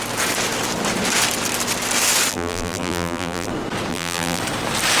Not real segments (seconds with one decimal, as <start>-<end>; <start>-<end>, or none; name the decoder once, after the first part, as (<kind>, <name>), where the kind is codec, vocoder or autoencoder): 2.3-3.5 (vocoder, BigVGAN v2); 3.9-4.4